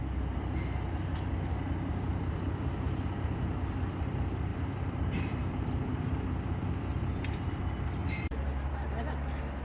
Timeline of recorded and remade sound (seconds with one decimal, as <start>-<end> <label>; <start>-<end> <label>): 0.0-4.5 recorded; 4.5-5.6 remade; 5.6-8.0 recorded; 8.0-8.9 remade; 8.9-9.6 recorded